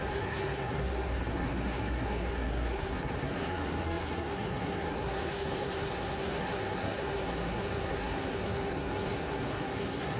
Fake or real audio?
fake